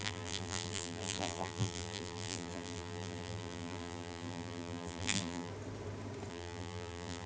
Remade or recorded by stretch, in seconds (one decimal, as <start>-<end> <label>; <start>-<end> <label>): 0.0-5.5 remade; 5.5-6.3 recorded; 6.3-7.3 remade